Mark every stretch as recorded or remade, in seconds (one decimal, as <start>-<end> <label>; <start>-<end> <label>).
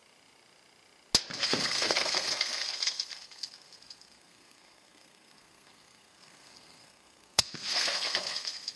0.0-1.4 recorded; 1.4-8.8 remade